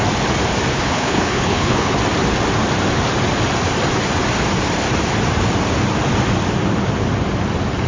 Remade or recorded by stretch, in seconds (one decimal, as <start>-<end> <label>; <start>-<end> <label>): 0.0-0.7 recorded; 0.7-1.9 remade; 1.9-7.9 recorded